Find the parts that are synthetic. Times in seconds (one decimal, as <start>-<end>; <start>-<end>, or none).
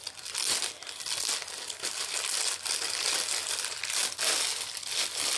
none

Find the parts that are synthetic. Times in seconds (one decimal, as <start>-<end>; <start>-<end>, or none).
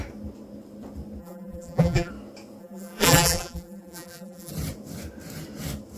1.2-2.1; 2.6-4.5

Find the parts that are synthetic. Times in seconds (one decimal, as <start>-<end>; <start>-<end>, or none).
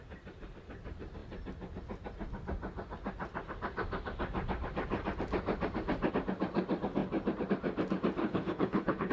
8.2-9.1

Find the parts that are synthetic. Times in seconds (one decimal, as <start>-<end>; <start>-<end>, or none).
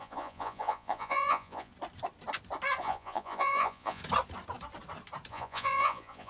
0.0-1.7; 2.8-4.0; 5.3-6.3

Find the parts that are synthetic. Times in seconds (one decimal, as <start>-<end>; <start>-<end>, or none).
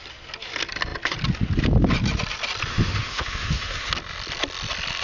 2.7-3.9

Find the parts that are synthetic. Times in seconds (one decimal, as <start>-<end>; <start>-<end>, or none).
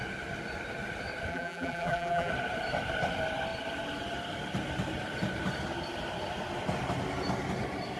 1.3-2.3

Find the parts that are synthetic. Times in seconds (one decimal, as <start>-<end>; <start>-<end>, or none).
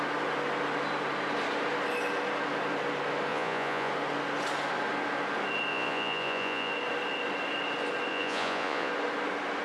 3.3-3.9; 5.7-6.7; 8.1-8.9